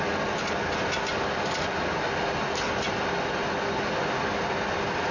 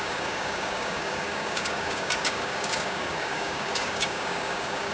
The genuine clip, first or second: first